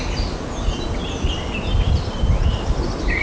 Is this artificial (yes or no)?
no